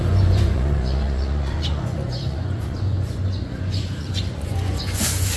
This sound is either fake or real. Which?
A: fake